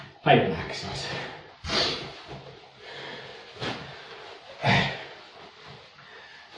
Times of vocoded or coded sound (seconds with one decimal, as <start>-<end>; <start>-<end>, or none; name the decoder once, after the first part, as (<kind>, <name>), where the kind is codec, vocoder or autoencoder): none